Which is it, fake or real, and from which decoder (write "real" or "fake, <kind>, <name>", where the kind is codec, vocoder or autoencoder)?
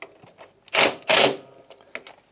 real